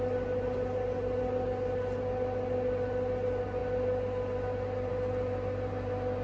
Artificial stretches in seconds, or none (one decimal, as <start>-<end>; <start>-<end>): none